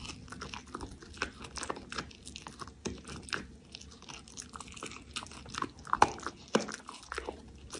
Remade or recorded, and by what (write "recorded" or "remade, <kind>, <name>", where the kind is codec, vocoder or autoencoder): recorded